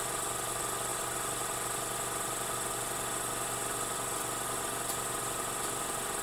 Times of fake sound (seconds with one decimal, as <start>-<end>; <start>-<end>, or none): none